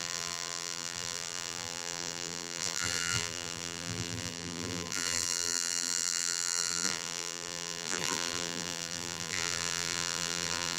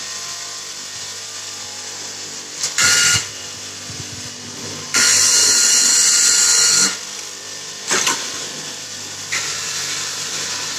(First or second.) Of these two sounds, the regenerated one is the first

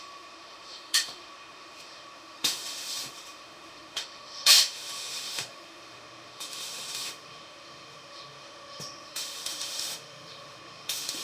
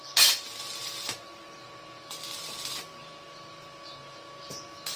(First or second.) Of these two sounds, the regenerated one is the first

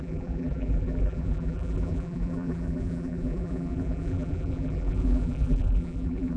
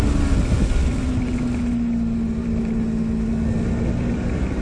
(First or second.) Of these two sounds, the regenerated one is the first